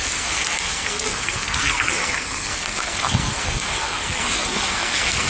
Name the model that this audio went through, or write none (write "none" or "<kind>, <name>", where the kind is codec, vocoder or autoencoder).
codec, SNAC